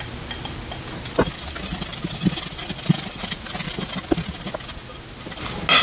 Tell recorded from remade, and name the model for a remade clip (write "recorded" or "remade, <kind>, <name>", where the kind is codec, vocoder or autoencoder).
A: recorded